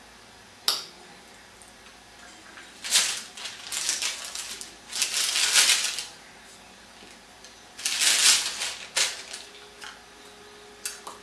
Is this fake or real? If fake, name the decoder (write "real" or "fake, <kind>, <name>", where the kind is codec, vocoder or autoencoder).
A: real